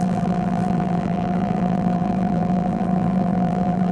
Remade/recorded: remade